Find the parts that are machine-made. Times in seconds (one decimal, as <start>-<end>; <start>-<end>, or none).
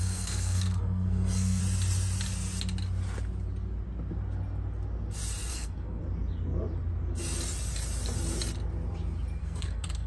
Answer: 0.0-1.6; 5.5-6.0; 9.4-10.1